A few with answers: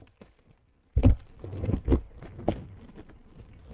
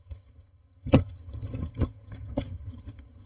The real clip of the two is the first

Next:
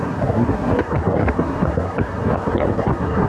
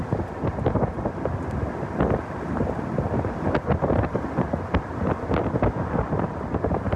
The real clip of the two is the second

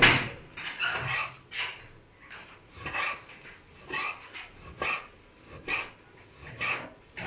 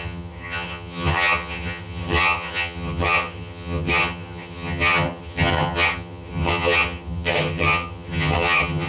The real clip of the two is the first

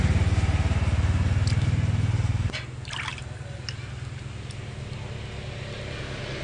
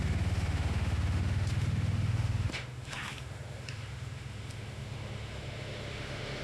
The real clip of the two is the first